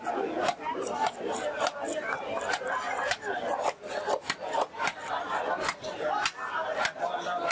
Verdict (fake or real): real